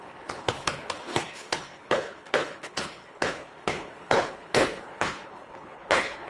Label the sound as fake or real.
fake